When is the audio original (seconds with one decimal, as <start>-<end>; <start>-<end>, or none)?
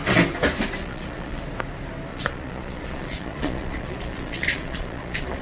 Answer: 0.0-0.8; 1.4-2.1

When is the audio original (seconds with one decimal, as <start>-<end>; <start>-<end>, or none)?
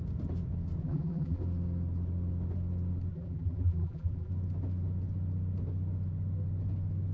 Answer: 0.0-0.8; 1.4-3.1; 4.3-7.1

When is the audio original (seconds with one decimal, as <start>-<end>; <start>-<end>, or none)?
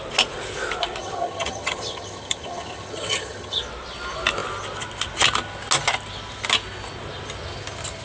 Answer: 0.0-1.0; 3.6-8.0